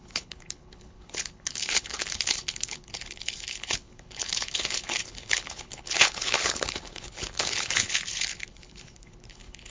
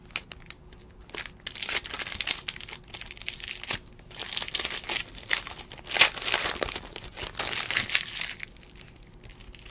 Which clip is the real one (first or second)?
second